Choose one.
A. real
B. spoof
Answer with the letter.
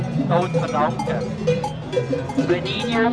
A